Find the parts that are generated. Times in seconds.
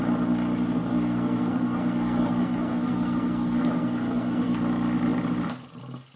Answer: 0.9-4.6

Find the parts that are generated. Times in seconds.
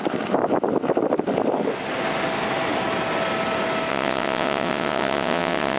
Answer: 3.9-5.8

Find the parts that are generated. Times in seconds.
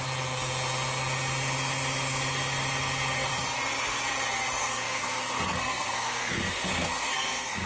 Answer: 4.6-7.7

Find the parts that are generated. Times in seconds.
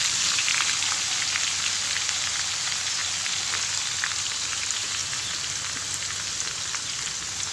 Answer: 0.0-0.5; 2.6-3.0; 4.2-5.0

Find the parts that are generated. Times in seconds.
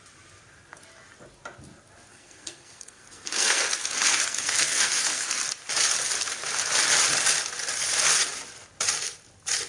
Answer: 2.1-5.4